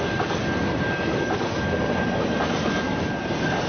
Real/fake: real